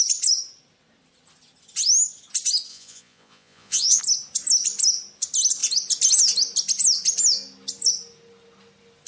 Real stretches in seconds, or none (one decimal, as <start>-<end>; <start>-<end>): 0.0-2.7; 4.0-9.1